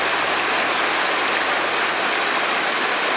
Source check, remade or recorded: recorded